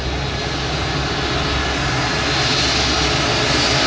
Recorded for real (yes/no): yes